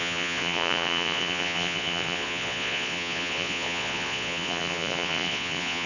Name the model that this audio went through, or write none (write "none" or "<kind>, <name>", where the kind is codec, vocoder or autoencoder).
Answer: vocoder, Vocos